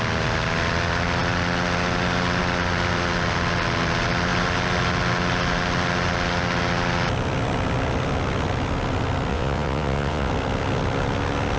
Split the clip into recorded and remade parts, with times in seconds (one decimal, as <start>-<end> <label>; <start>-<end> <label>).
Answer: 0.0-9.3 recorded; 9.3-10.3 remade; 10.3-11.6 recorded